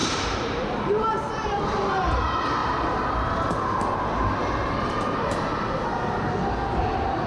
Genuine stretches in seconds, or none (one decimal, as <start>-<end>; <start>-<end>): 1.6-7.3